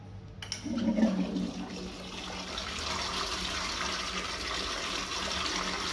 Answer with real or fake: real